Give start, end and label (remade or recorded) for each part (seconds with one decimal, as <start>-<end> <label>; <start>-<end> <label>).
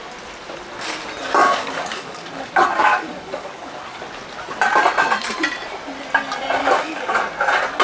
0.0-1.4 recorded; 1.4-4.0 remade; 4.0-6.6 recorded; 6.6-7.2 remade; 7.2-7.8 recorded